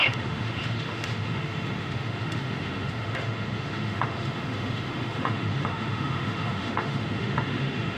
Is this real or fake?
fake